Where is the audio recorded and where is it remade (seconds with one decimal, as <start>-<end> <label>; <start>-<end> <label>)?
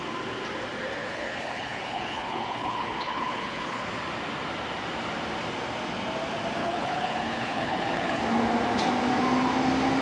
0.0-1.0 recorded; 1.0-3.8 remade; 3.8-6.6 recorded; 6.6-8.2 remade; 8.2-10.0 recorded